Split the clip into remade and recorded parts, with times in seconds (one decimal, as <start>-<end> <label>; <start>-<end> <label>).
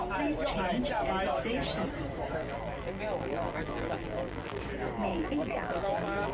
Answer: 0.0-2.4 recorded; 2.4-4.6 remade; 4.6-5.1 recorded; 5.1-6.3 remade